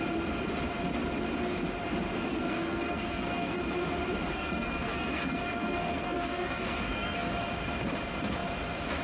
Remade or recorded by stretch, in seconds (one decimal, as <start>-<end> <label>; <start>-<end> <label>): 0.0-2.3 recorded; 2.3-3.6 remade; 3.6-4.3 recorded; 4.3-7.3 remade; 7.3-9.0 recorded